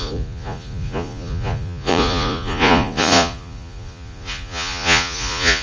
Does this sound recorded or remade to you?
remade